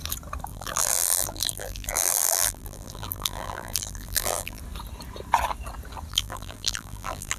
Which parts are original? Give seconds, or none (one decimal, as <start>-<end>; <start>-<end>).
0.0-0.5; 4.6-6.1